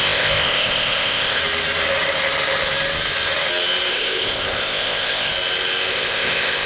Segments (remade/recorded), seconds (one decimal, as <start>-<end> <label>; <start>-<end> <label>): 0.0-1.4 remade; 1.4-3.9 recorded; 3.9-5.3 remade; 5.3-5.9 recorded; 5.9-6.7 remade